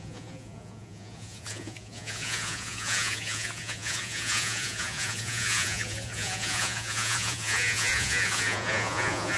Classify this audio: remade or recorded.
remade